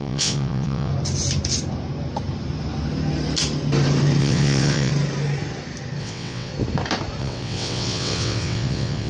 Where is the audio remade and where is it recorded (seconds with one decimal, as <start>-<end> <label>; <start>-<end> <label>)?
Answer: 0.0-0.9 remade; 0.9-4.2 recorded; 4.2-4.9 remade; 4.9-6.0 recorded; 6.0-6.5 remade; 6.5-7.2 recorded; 7.2-9.1 remade